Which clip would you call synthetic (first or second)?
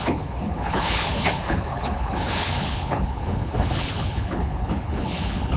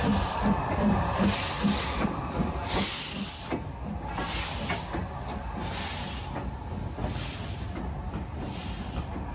first